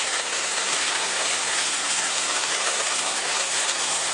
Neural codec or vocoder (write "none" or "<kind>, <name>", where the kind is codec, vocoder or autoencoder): codec, SNAC